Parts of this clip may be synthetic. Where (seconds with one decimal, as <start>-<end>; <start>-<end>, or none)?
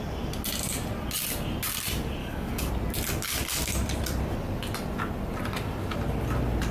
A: 2.2-2.7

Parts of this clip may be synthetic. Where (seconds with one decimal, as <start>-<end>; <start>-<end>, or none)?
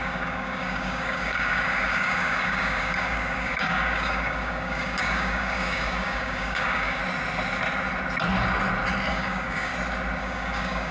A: 0.0-7.0; 9.1-9.7; 10.2-10.9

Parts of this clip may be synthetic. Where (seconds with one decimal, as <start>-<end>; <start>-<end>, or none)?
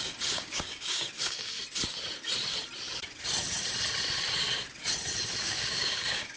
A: 0.0-1.6; 5.4-6.4